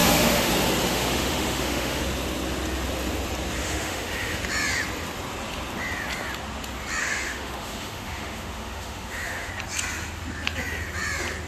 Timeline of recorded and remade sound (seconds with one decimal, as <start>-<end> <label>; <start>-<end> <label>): 0.0-0.5 remade; 0.5-0.9 recorded; 0.9-2.0 remade; 2.0-3.6 recorded; 3.6-4.4 remade; 4.4-7.0 recorded; 7.0-9.5 remade; 9.5-11.5 recorded